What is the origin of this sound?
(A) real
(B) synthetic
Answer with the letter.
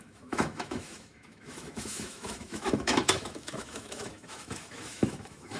B